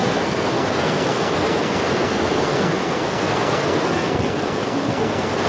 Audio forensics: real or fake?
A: fake